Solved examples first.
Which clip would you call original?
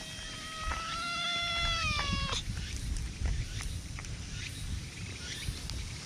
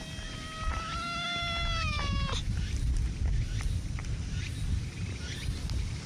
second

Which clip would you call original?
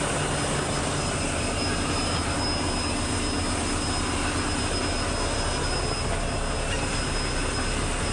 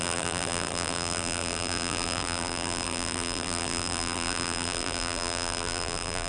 first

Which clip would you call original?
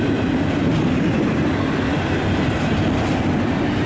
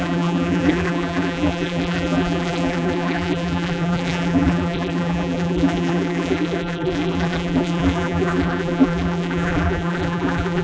first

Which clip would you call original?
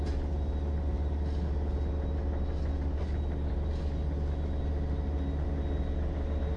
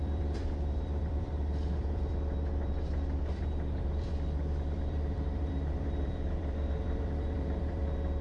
first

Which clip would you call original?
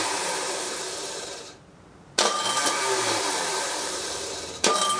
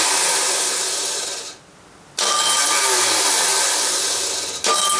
second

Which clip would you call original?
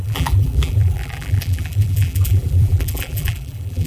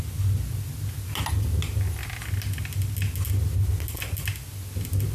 second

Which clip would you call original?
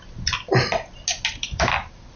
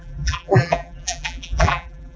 first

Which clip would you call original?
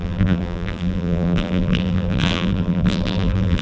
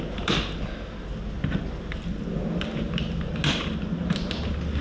second